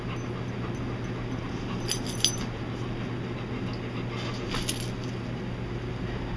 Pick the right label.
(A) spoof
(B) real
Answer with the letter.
B